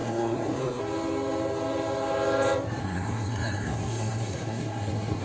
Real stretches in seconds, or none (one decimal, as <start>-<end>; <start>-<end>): 0.8-2.8